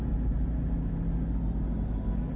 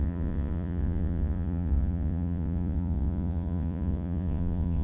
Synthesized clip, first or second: second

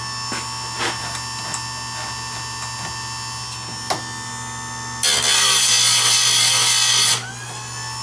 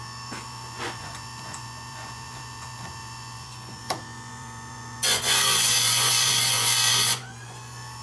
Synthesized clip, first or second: second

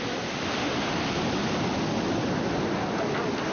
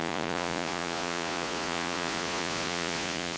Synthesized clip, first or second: second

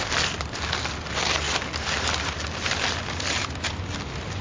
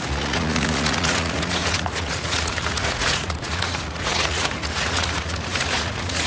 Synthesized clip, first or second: second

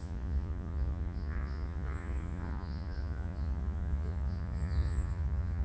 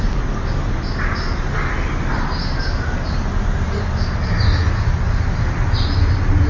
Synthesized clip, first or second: first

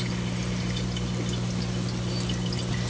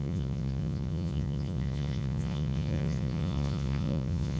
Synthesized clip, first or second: second